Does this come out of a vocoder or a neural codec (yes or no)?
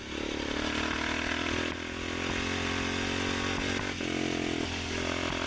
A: no